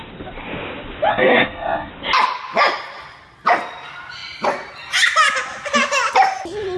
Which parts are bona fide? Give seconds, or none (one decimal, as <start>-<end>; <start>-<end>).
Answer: 0.0-1.1; 1.9-6.8